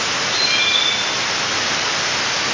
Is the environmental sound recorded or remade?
recorded